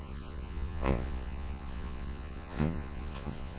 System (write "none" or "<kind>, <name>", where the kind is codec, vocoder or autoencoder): vocoder, Vocos